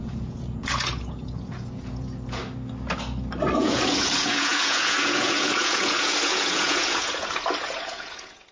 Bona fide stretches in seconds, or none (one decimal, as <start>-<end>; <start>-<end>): 2.4-3.6